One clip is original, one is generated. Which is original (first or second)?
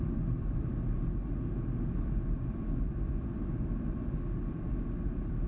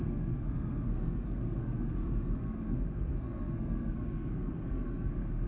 first